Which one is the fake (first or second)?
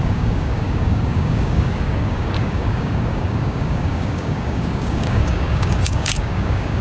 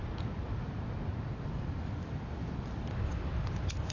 first